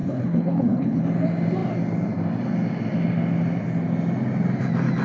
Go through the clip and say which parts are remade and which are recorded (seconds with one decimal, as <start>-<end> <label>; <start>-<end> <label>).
0.0-1.0 remade; 1.0-5.0 recorded

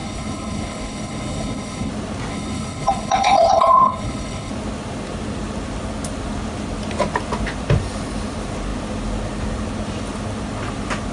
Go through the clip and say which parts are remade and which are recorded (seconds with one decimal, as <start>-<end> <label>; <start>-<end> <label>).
0.0-1.9 remade; 1.9-2.3 recorded; 2.3-4.5 remade; 4.5-11.1 recorded

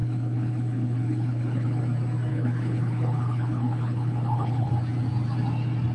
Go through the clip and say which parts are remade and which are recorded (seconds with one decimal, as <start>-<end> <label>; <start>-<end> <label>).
0.0-1.8 remade; 1.8-2.3 recorded; 2.3-4.7 remade; 4.7-5.9 recorded

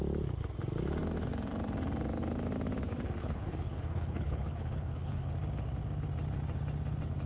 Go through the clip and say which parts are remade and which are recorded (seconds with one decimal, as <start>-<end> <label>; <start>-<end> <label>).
0.0-3.2 recorded; 3.2-5.3 remade; 5.3-7.3 recorded

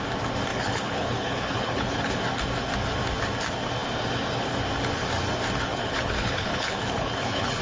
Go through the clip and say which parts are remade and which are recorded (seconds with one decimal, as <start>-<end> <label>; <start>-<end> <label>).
0.0-0.5 recorded; 0.5-2.2 remade; 2.2-5.7 recorded; 5.7-7.6 remade